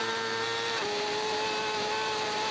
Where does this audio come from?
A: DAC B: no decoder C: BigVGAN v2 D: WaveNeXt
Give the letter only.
C